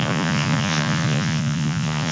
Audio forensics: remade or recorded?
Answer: remade